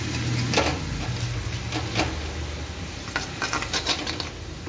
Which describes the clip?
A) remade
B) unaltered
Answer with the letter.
B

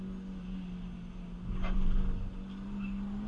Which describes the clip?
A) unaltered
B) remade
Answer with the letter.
A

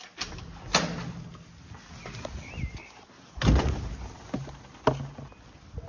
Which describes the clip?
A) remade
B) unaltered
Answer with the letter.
B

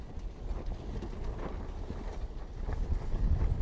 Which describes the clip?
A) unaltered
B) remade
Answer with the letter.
A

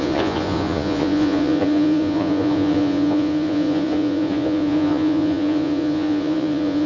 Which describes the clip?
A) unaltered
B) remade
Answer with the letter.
B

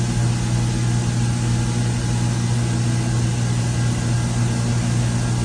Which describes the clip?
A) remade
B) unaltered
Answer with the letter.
B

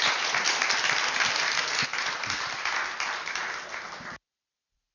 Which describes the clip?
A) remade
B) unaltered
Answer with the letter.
B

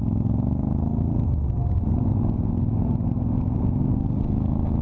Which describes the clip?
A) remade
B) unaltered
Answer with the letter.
B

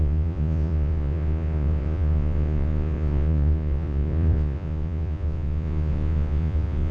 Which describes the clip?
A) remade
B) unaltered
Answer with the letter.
A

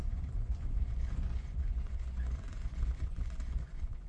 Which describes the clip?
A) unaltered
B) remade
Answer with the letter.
B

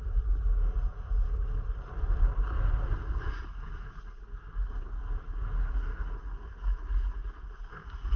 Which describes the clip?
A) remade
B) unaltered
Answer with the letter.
B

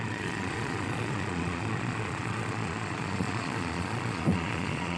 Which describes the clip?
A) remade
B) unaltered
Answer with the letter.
A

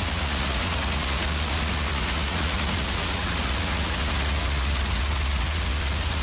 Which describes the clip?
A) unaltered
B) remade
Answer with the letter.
B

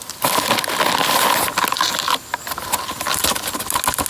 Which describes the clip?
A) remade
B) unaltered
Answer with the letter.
B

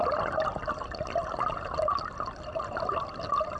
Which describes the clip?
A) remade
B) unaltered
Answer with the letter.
B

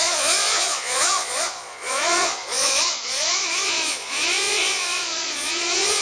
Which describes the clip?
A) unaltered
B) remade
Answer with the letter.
B